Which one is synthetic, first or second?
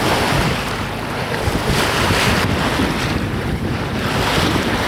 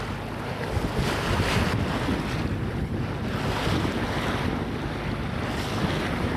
first